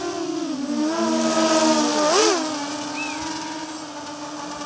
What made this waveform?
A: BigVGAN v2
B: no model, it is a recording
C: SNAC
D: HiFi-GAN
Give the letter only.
B